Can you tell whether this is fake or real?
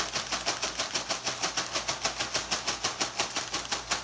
real